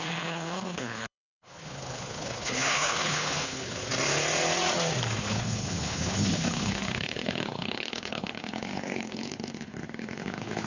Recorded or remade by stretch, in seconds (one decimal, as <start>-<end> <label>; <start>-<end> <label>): 0.0-3.8 remade; 3.8-5.2 recorded; 5.2-10.7 remade